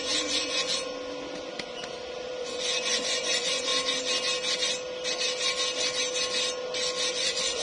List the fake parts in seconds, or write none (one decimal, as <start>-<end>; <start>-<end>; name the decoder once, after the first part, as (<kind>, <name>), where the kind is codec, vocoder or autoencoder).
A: 0.0-0.9 (vocoder, Vocos); 2.4-3.7; 7.1-7.6